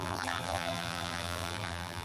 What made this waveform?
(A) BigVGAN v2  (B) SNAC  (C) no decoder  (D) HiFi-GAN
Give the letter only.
A